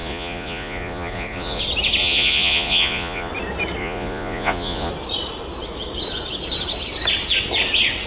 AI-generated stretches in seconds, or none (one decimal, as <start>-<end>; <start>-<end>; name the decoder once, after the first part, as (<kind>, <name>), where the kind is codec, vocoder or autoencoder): 0.0-1.6 (vocoder, Vocos); 2.0-3.3; 3.8-4.9